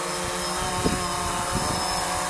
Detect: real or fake real